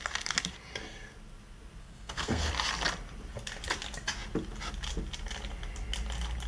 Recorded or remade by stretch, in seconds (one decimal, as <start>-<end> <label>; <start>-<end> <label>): 0.0-1.8 recorded; 1.8-2.5 remade; 2.5-6.5 recorded